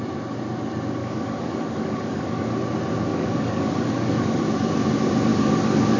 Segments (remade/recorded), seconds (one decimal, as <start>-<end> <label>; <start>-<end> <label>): 0.0-1.0 recorded; 1.0-2.5 remade; 2.5-3.1 recorded; 3.1-4.4 remade; 4.4-5.3 recorded; 5.3-6.0 remade